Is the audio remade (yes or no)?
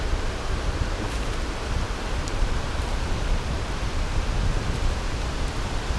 yes